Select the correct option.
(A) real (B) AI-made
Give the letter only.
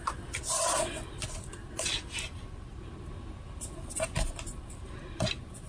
A